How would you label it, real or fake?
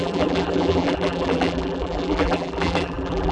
fake